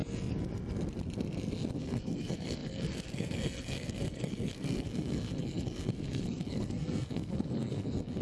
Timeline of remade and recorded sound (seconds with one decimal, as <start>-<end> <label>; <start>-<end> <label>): 0.0-1.8 recorded; 1.8-8.2 remade